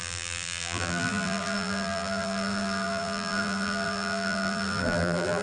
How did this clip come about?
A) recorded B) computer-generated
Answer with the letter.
B